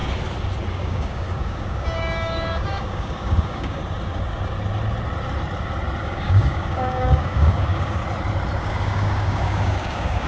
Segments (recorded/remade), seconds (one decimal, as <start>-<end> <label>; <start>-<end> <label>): 0.0-0.7 recorded; 0.7-3.8 remade; 3.8-6.0 recorded; 6.0-8.0 remade; 8.0-8.6 recorded; 8.6-10.3 remade